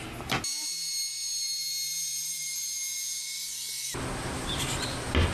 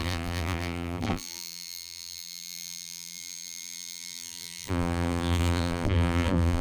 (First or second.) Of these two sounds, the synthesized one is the second